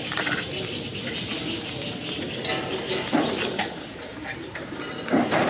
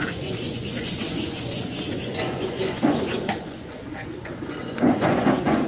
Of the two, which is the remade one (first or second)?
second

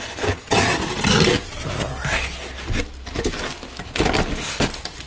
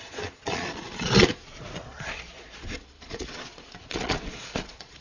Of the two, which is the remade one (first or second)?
second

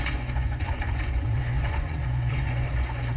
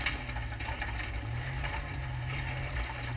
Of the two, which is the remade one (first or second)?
first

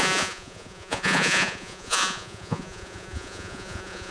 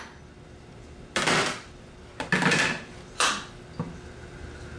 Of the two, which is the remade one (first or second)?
first